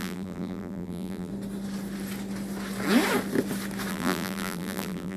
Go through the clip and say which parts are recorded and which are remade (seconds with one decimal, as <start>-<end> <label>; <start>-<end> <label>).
0.0-1.3 remade; 1.3-3.9 recorded; 3.9-5.2 remade